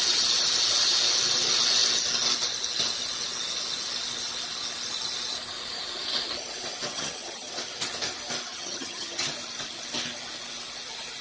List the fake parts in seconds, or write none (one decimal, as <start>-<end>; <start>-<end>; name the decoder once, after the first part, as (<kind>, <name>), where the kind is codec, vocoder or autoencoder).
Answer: 6.9-7.5 (vocoder, HiFi-GAN); 8.5-9.3